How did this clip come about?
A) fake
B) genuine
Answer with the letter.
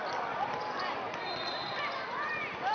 A